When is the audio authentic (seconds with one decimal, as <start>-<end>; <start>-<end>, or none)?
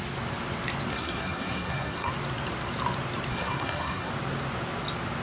0.0-0.9; 2.1-3.3; 4.1-5.2